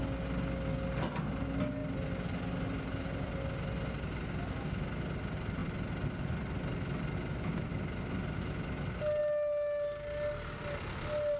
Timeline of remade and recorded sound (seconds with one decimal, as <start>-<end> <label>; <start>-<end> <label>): 0.0-11.4 recorded